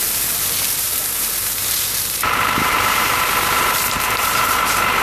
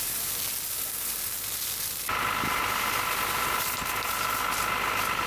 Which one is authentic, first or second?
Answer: second